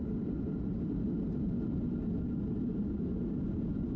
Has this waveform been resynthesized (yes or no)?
no